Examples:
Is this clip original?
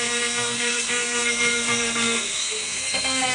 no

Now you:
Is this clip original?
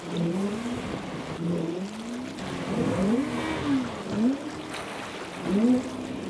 yes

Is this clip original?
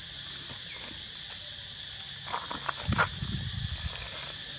yes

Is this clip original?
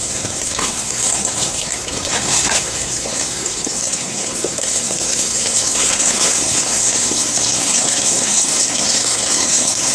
no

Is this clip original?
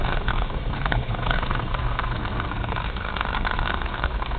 no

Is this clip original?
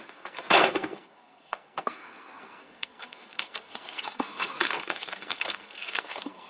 no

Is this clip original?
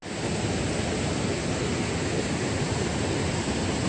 yes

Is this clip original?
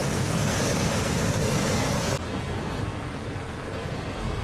no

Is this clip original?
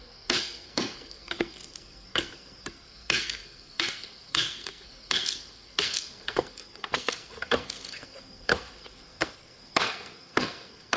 no